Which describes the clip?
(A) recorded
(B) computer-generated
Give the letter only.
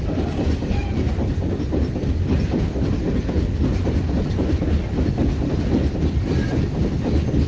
A